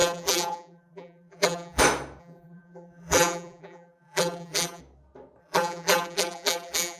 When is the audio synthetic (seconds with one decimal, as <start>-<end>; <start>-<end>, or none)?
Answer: 0.0-1.8; 2.2-4.8; 5.4-7.0